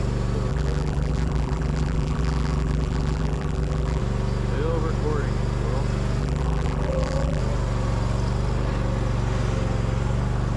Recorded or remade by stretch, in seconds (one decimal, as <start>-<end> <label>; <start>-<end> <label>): 0.0-0.5 recorded; 0.5-4.0 remade; 4.0-6.2 recorded; 6.2-7.4 remade; 7.4-10.6 recorded